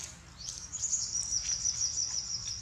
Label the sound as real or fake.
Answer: real